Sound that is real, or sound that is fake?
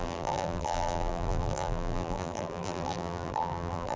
fake